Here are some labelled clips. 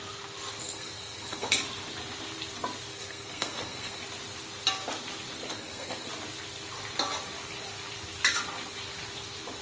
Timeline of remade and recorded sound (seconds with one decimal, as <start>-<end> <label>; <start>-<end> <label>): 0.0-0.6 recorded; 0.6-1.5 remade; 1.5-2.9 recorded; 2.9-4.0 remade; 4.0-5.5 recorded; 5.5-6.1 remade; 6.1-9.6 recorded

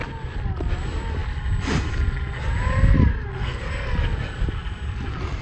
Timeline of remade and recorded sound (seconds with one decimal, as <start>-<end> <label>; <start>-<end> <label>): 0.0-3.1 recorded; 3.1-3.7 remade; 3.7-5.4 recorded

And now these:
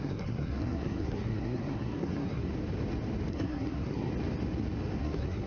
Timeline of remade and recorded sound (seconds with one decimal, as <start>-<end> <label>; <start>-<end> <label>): 0.0-2.5 remade; 2.5-3.3 recorded; 3.3-4.1 remade; 4.1-5.0 recorded; 5.0-5.5 remade

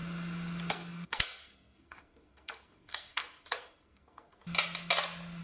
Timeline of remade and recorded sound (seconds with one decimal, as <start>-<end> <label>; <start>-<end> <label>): 0.0-0.7 recorded; 0.7-4.4 remade; 4.4-5.4 recorded